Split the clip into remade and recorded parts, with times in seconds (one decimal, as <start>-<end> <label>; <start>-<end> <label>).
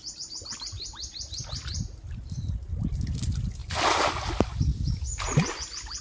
0.0-6.0 recorded